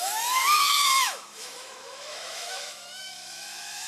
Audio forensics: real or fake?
fake